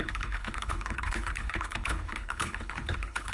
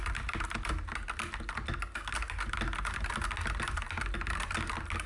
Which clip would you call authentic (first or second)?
second